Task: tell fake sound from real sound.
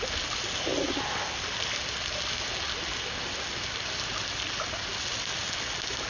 real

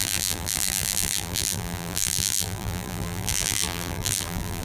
fake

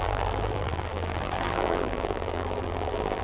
fake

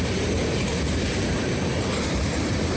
fake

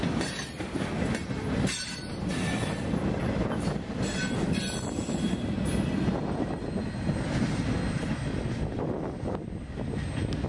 real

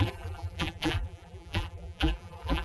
fake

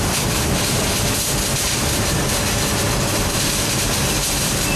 fake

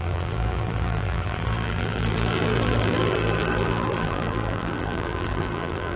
fake